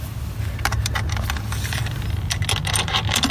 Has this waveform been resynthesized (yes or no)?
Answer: no